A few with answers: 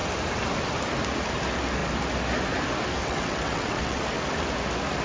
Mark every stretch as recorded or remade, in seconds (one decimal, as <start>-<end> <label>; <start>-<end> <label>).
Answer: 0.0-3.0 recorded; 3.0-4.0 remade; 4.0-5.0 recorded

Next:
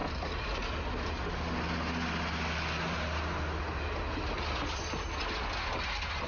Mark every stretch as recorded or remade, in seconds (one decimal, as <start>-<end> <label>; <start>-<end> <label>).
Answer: 0.0-6.3 recorded

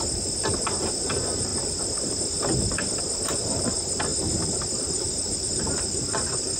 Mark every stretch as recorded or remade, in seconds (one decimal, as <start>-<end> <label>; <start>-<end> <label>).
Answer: 0.0-4.1 recorded; 4.1-5.5 remade; 5.5-6.6 recorded

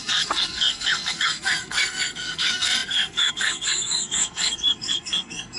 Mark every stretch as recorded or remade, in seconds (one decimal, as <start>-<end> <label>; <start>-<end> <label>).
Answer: 0.0-5.6 remade

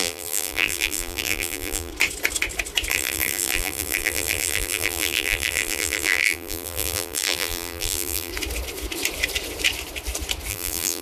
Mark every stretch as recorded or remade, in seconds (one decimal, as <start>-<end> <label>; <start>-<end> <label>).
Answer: 0.0-1.9 remade; 1.9-2.9 recorded; 2.9-8.3 remade; 8.3-10.5 recorded; 10.5-11.0 remade

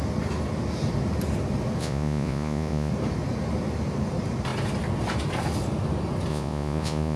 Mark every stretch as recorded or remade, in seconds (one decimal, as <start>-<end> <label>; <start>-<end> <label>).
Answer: 0.0-1.8 recorded; 1.8-2.9 remade; 2.9-6.3 recorded; 6.3-7.2 remade

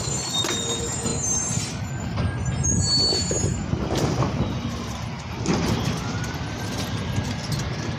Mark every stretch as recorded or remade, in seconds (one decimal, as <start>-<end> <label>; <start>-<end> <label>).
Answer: 0.0-8.0 recorded